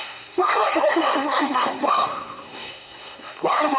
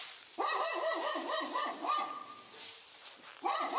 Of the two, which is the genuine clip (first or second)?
second